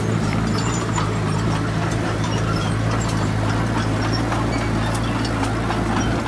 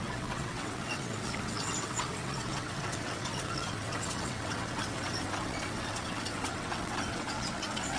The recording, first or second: first